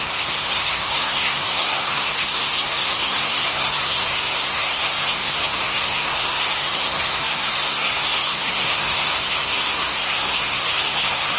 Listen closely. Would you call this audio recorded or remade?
remade